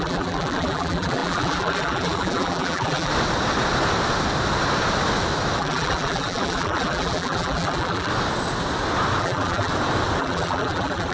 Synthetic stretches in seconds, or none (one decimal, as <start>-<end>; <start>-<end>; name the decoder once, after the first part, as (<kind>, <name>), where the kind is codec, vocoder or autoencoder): 0.0-3.1 (vocoder, BigVGAN v2); 5.6-8.1; 9.2-9.7; 10.2-11.1